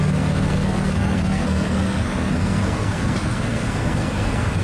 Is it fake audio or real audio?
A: fake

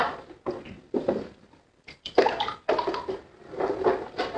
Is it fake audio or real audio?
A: real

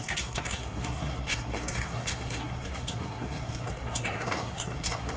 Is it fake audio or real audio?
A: fake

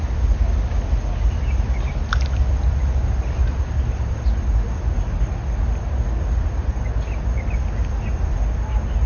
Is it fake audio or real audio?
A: real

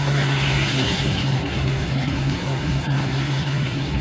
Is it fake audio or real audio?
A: fake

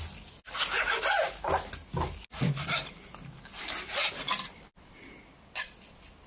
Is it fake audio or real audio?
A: real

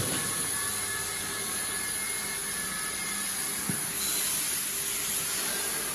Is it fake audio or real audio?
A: real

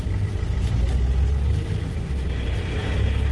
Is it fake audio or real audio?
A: real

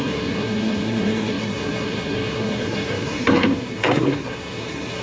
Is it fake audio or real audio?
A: fake